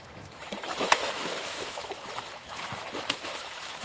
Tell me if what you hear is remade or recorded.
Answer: remade